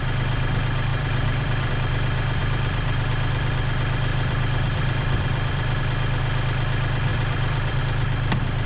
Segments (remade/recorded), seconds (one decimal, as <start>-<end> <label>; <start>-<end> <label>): 0.0-0.9 recorded; 0.9-1.7 remade; 1.7-2.4 recorded; 2.4-3.5 remade; 3.5-4.1 recorded; 4.1-5.8 remade; 5.8-7.1 recorded; 7.1-7.8 remade; 7.8-8.7 recorded